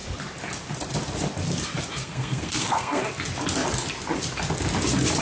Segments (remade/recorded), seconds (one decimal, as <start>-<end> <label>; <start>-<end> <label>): 0.0-2.0 recorded; 2.0-3.0 remade; 3.0-5.2 recorded